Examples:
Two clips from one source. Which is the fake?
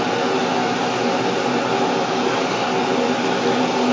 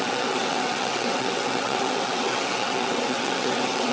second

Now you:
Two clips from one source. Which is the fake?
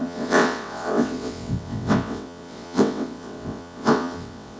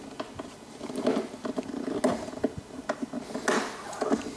first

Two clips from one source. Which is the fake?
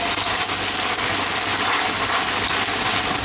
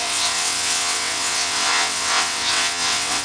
second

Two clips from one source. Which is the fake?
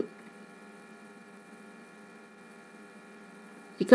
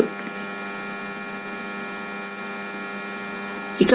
first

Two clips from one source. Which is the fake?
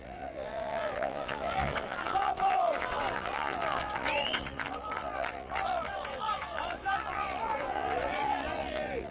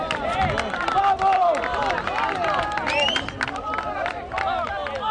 first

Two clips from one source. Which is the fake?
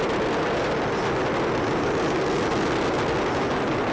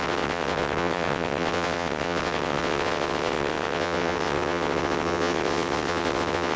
second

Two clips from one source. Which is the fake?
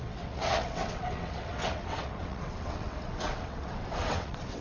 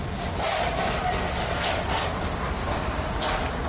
first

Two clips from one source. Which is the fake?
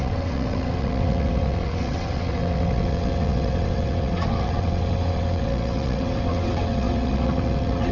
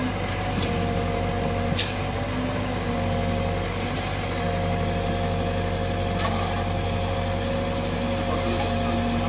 first